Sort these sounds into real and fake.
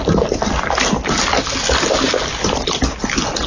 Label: real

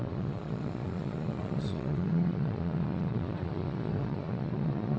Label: fake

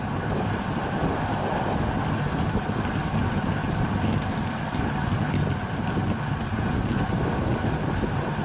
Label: real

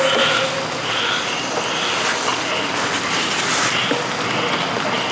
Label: real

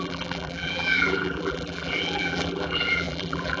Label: fake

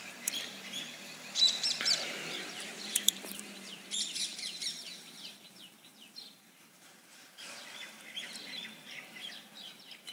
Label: fake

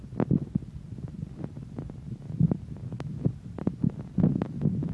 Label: real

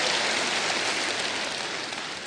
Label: real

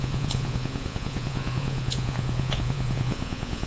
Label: fake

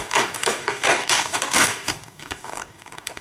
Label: fake